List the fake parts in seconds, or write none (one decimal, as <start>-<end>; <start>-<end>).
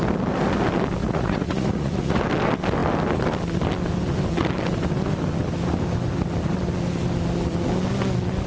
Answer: 1.0-2.2